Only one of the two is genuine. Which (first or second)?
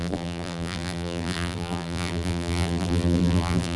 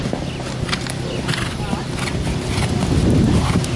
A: second